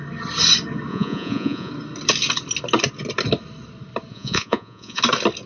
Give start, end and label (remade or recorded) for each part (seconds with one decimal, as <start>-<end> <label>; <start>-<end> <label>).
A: 0.0-0.9 recorded; 0.9-1.7 remade; 1.7-4.1 recorded; 4.1-5.0 remade; 5.0-5.5 recorded